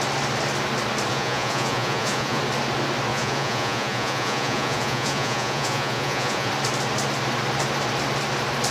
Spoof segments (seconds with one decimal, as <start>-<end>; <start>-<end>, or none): 1.1-2.4; 3.1-6.5